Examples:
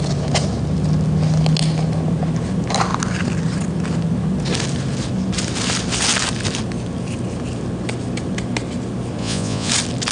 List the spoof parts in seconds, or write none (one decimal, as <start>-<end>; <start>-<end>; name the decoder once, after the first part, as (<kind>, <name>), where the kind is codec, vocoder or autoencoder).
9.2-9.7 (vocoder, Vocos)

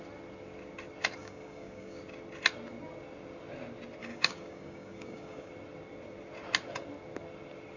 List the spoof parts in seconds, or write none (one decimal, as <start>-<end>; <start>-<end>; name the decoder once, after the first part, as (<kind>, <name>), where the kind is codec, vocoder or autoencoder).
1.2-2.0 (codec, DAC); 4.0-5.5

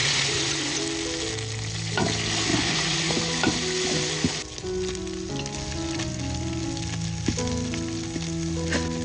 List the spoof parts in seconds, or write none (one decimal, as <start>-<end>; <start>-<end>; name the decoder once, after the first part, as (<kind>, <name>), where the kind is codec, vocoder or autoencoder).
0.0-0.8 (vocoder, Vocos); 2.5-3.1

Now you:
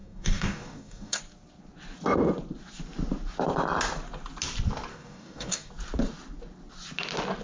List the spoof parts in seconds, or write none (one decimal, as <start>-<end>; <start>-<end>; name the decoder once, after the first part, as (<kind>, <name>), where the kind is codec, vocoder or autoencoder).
0.0-1.2 (codec, DAC); 4.9-5.7